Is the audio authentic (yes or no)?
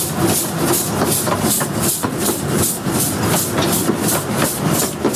yes